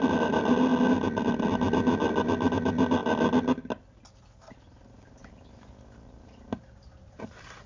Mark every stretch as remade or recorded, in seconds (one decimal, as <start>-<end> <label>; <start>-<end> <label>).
0.0-7.7 recorded